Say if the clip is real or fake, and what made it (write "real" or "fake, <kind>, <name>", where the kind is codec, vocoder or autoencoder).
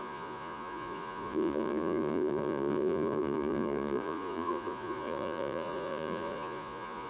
fake, vocoder, Vocos